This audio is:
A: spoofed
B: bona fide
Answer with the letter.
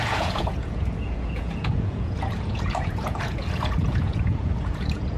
A